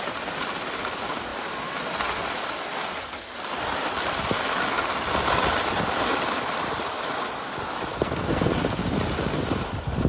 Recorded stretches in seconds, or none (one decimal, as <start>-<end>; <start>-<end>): 0.0-7.9; 8.5-10.1